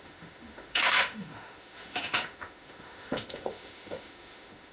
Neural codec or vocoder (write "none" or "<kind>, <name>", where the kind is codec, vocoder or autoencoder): autoencoder, DAC-VAE